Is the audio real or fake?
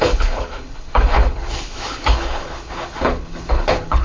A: fake